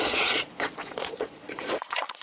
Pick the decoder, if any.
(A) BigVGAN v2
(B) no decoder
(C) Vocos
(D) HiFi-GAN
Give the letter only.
C